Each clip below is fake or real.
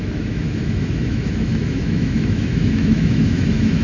fake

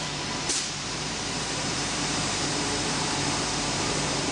fake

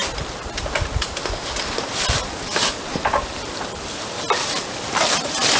real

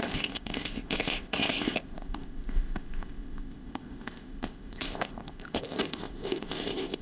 fake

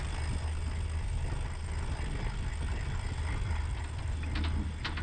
real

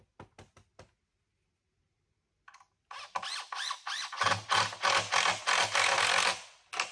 real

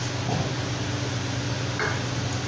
real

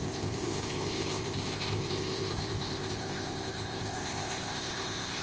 fake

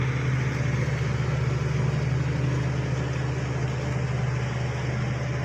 real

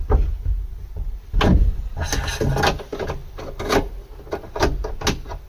real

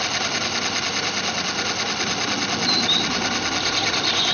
real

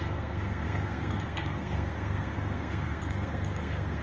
fake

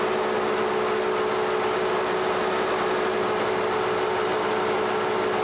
real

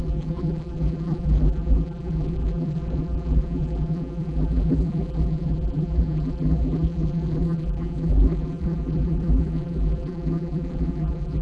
fake